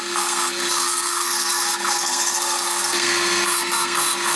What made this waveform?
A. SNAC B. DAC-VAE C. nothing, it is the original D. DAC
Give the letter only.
A